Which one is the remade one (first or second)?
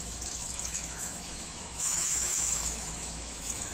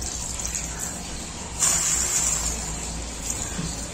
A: first